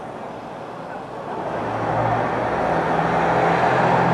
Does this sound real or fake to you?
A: real